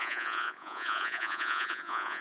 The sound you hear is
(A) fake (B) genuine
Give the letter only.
A